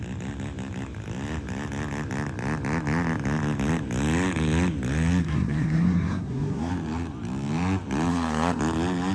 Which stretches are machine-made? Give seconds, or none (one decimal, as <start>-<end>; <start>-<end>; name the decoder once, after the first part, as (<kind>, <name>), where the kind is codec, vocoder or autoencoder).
5.2-6.7 (codec, SNAC); 8.1-8.6